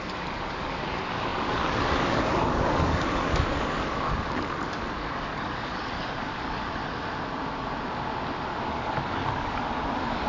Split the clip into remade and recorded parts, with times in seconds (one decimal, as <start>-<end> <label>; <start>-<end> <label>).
0.0-6.8 remade; 6.8-8.7 recorded; 8.7-10.3 remade